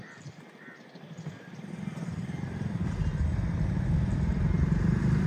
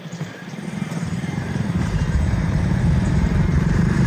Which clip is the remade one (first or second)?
second